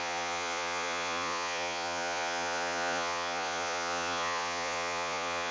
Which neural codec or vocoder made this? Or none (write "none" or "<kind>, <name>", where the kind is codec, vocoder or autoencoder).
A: vocoder, Vocos